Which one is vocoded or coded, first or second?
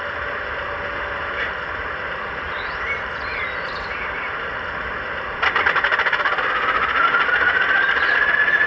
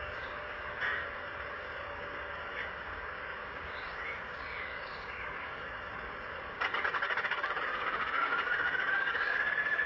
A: second